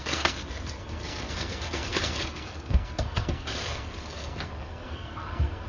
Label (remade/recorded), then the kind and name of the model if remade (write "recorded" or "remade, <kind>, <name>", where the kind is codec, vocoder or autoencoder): remade, codec, SNAC